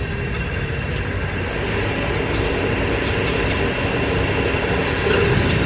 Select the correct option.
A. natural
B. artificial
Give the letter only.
A